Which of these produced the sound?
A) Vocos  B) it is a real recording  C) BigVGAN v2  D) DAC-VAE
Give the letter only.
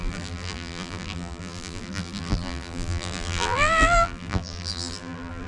C